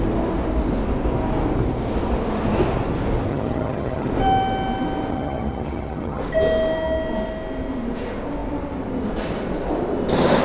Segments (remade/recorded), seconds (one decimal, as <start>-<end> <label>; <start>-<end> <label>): 0.0-3.3 recorded; 3.3-4.1 remade; 4.1-5.1 recorded; 5.1-6.2 remade; 6.2-10.4 recorded